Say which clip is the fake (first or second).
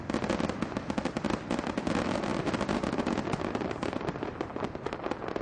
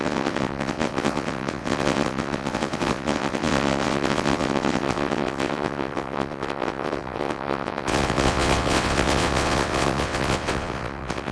second